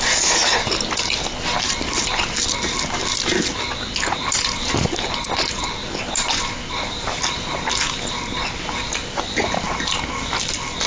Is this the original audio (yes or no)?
yes